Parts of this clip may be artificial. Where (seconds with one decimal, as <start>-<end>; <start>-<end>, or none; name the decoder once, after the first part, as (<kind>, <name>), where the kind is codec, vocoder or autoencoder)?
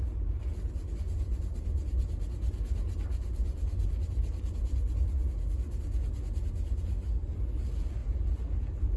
none